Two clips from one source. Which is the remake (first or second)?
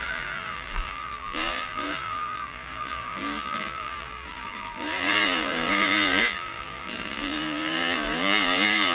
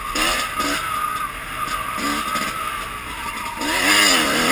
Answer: first